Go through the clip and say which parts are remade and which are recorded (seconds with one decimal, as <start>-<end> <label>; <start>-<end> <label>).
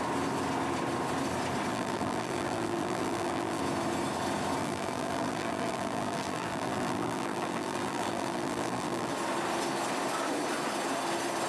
0.0-1.7 recorded; 1.7-3.6 remade; 3.6-4.6 recorded; 4.6-9.1 remade; 9.1-11.5 recorded